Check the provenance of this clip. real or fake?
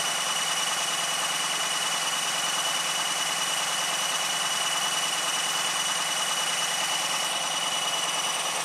real